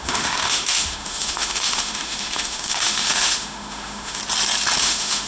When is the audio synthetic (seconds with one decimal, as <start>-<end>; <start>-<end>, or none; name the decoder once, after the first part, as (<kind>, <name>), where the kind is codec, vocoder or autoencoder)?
0.0-4.2 (autoencoder, DAC-VAE); 4.8-5.3